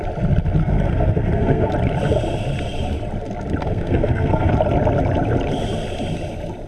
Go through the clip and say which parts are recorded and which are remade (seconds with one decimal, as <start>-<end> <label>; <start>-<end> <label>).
0.0-0.6 recorded; 0.6-1.7 remade; 1.7-3.6 recorded; 3.6-4.5 remade; 4.5-6.7 recorded